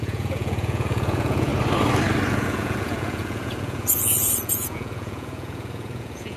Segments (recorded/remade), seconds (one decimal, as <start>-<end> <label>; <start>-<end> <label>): 0.0-1.5 remade; 1.5-2.3 recorded; 2.3-6.4 remade